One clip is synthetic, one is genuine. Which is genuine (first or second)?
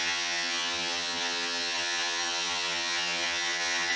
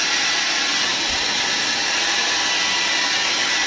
second